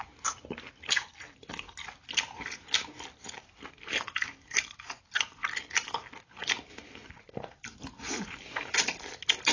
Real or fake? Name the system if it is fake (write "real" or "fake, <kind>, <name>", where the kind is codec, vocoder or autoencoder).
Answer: real